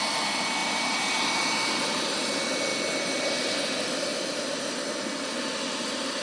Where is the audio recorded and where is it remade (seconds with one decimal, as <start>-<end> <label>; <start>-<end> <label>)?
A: 0.0-0.6 recorded; 0.6-1.7 remade; 1.7-6.2 recorded